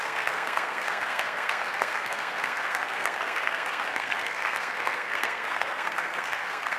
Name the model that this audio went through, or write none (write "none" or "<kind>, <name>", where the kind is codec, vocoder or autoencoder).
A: codec, SNAC